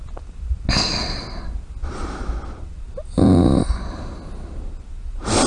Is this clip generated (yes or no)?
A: no